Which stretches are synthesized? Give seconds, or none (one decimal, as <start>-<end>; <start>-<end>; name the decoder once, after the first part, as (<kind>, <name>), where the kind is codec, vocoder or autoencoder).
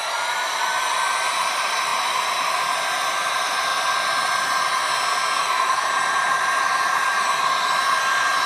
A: 0.8-1.9 (vocoder, BigVGAN v2); 3.3-3.7; 5.4-7.1